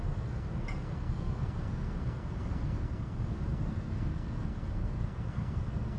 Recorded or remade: remade